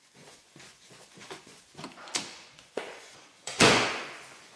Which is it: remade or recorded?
remade